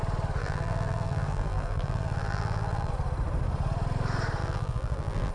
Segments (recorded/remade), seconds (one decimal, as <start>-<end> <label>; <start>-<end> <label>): 0.0-0.4 recorded; 0.4-2.9 remade; 2.9-4.4 recorded; 4.4-5.3 remade